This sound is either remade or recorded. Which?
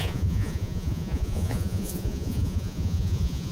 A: remade